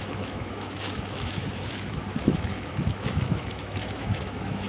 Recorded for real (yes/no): no